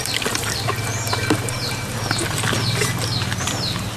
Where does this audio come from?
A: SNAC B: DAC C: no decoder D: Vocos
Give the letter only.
C